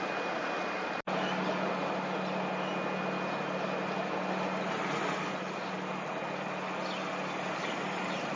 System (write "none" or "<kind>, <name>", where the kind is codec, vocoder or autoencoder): none